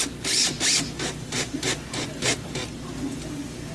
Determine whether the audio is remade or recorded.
recorded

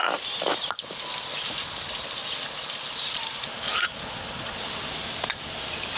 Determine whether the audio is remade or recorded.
recorded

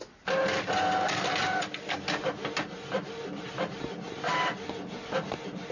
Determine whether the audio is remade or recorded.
recorded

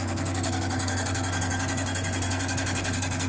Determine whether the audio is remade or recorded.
remade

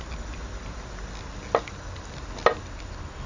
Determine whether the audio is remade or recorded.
recorded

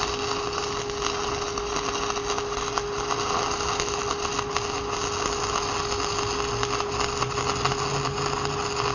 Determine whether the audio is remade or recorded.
recorded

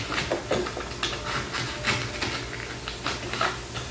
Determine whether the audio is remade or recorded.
recorded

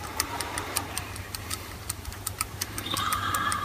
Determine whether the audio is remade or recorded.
remade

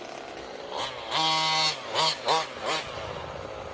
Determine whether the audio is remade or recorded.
recorded